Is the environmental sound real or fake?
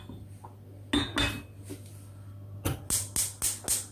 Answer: real